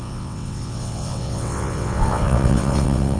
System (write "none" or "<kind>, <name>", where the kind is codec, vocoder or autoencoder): vocoder, WaveNeXt